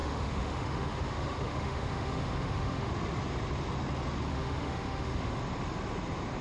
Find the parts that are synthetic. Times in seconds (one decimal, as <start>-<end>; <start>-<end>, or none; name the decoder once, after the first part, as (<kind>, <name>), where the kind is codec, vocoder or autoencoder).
0.0-2.9 (autoencoder, DAC-VAE); 4.3-5.4